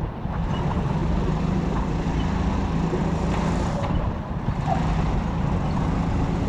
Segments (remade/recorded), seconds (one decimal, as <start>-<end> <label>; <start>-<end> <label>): 0.0-6.5 recorded